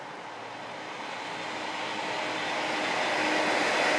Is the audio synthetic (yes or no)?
no